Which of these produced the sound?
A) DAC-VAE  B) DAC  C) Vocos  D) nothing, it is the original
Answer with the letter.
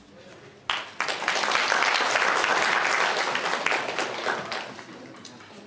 D